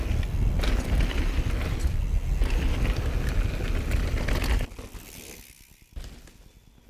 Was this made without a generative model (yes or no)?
yes